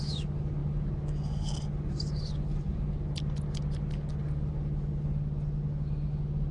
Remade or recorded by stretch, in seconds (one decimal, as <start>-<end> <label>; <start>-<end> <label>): 0.0-6.5 recorded